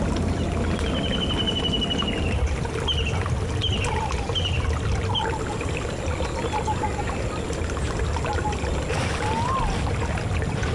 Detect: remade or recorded recorded